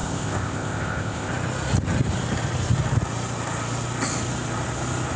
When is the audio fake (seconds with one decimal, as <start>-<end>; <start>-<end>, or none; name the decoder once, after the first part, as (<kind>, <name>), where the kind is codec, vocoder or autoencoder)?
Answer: 0.0-1.3 (codec, ZipCodec)